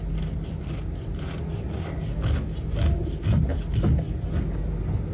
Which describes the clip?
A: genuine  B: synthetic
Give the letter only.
A